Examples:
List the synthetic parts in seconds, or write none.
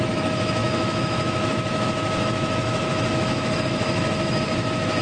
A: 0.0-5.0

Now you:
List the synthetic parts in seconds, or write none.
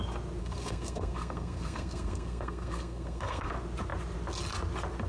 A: 0.4-3.5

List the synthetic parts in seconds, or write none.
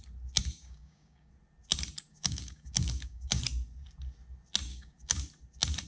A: 0.4-1.3; 2.1-3.4; 4.7-5.2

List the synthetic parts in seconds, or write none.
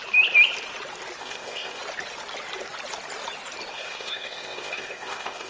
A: 1.2-1.8; 3.7-5.5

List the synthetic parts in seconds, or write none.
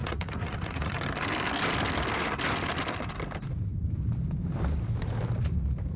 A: 0.0-1.0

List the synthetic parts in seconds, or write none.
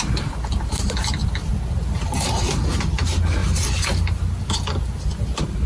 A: none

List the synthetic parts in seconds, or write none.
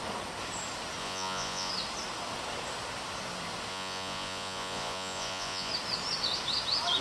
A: 1.0-1.7; 3.7-5.7